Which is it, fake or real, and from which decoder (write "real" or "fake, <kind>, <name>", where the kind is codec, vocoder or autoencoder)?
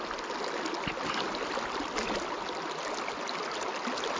real